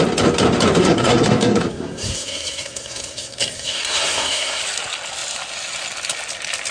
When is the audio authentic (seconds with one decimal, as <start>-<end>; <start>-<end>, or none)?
0.0-0.8; 4.6-6.7